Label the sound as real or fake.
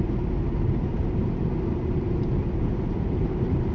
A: real